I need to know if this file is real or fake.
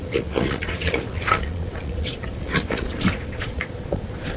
fake